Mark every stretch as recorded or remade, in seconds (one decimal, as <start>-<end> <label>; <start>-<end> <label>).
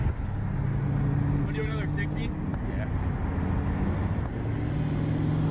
0.0-5.5 recorded